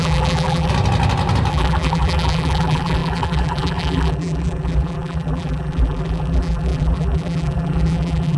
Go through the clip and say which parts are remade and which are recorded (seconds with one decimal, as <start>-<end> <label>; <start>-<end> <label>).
0.0-0.7 remade; 0.7-1.5 recorded; 1.5-8.4 remade